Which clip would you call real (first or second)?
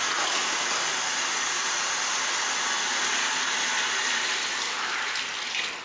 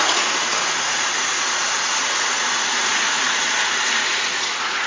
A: first